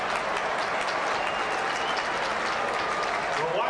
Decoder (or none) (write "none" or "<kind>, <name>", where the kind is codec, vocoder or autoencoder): none